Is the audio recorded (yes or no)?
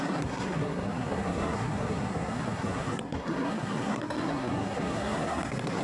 no